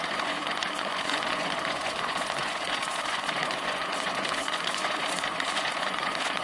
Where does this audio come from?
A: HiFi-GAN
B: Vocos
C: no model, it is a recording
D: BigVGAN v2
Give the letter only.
B